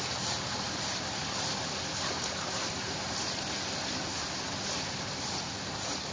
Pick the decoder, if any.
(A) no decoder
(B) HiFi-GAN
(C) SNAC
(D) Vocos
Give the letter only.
A